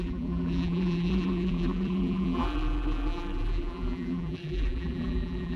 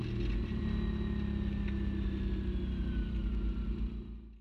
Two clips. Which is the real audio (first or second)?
second